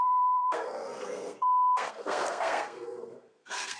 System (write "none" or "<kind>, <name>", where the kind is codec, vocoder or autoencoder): codec, SNAC